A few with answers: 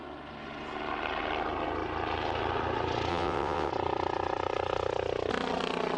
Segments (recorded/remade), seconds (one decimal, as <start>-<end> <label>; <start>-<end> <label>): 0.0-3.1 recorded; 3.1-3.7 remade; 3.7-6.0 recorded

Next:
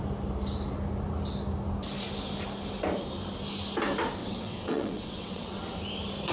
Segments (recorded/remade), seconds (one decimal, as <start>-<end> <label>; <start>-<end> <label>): 0.0-4.2 recorded; 4.2-5.8 remade; 5.8-6.3 recorded

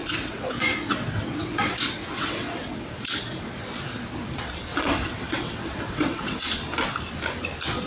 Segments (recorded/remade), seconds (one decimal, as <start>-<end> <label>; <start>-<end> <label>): 0.0-2.9 remade; 2.9-4.7 recorded; 4.7-6.4 remade; 6.4-7.9 recorded

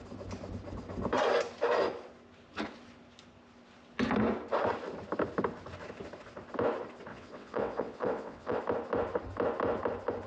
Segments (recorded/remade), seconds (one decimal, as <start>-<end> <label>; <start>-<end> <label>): 0.0-7.1 recorded; 7.1-8.6 remade; 8.6-10.3 recorded

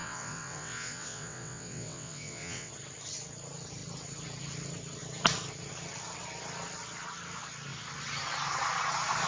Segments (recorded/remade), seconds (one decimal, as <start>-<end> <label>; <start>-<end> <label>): 0.0-2.7 remade; 2.7-9.3 recorded

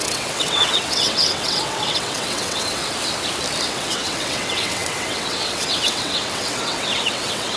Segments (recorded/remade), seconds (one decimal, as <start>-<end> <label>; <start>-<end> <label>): 0.0-2.8 remade; 2.8-3.7 recorded; 3.7-7.6 remade

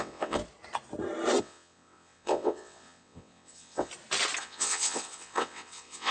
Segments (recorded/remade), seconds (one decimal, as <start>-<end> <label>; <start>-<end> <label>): 0.0-0.4 remade; 0.4-1.4 recorded; 1.4-3.9 remade; 3.9-4.4 recorded; 4.4-6.1 remade